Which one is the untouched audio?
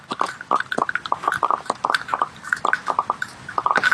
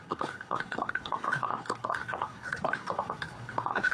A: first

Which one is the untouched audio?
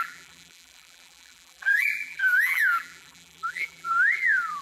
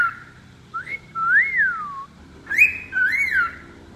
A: second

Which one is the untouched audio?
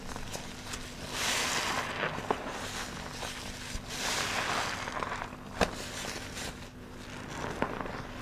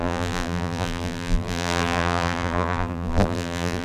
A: first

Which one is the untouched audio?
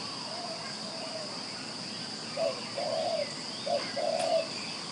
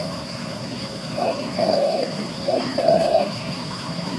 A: first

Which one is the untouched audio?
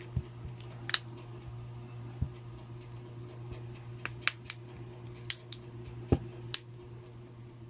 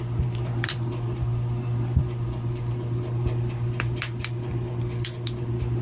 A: first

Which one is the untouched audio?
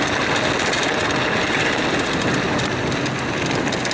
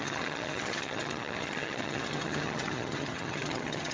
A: first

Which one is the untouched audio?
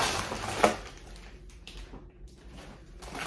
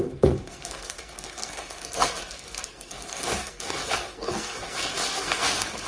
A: first